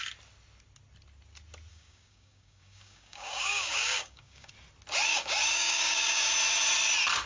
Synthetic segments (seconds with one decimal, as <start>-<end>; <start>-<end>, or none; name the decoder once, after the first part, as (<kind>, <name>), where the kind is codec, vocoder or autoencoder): 1.7-4.5 (codec, DAC); 5.1-6.3